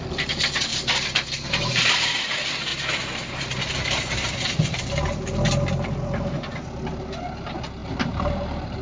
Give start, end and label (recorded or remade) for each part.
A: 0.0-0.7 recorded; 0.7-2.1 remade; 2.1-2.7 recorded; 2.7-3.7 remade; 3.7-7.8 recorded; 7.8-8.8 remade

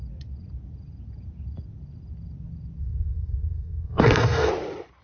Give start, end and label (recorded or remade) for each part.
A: 0.0-2.8 recorded; 2.8-4.5 remade; 4.5-5.0 recorded

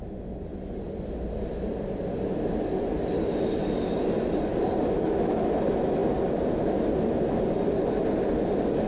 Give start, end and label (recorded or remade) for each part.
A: 0.0-4.5 recorded; 4.5-5.3 remade; 5.3-8.9 recorded

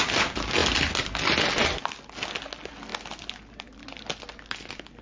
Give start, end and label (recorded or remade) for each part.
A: 0.0-5.0 recorded

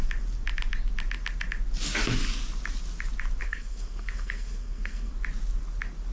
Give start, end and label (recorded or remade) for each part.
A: 0.0-3.4 recorded; 3.4-5.1 remade; 5.1-6.1 recorded

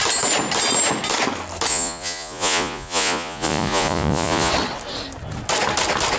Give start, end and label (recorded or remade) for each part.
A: 0.0-1.7 recorded; 1.7-4.5 remade; 4.5-6.2 recorded

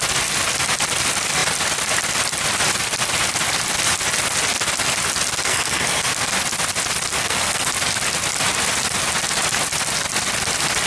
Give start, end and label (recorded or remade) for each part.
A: 0.0-5.3 recorded; 5.3-6.3 remade; 6.3-7.1 recorded; 7.1-7.7 remade; 7.7-10.9 recorded